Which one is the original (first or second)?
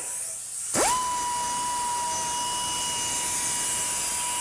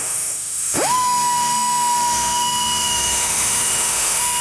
first